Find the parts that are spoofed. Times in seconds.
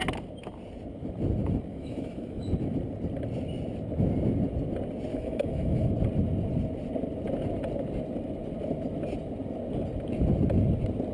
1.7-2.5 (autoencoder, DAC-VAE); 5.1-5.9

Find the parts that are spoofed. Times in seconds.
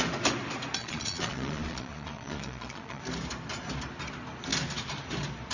0.8-3.0 (vocoder, Vocos)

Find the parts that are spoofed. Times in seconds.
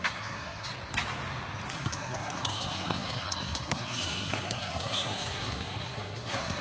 0.0-0.7 (codec, SNAC); 1.7-6.6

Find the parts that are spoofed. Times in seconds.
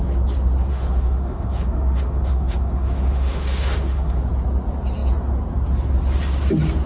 0.7-4.2 (autoencoder, DAC-VAE)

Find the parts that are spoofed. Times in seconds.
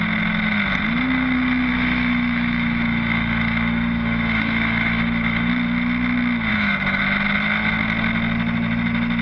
1.7-5.5 (autoencoder, DAC-VAE); 6.5-7.0